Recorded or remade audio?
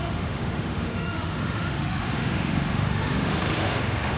remade